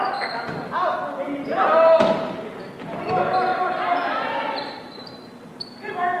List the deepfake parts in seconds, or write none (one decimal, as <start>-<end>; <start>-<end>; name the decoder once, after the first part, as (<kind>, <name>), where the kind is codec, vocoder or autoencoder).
1.5-2.0 (vocoder, BigVGAN v2); 3.5-5.3